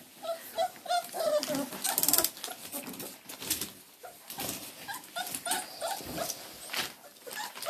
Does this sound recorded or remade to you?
recorded